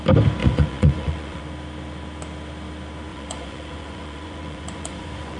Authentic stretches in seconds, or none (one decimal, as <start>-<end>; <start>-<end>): 0.0-0.4; 1.4-3.1